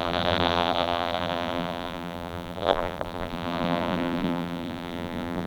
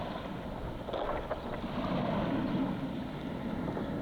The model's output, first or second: first